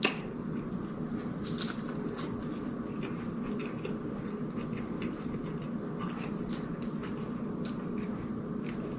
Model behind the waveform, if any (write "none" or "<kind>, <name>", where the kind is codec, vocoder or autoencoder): none